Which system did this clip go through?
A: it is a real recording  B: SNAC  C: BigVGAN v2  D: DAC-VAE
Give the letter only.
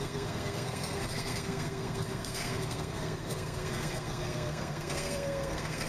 B